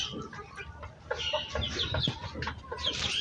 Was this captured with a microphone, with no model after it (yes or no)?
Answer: yes